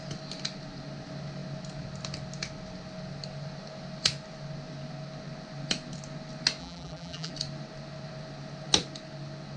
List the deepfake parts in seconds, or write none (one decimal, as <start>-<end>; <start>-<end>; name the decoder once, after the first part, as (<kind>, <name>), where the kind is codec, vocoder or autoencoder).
6.6-7.3 (vocoder, BigVGAN v2)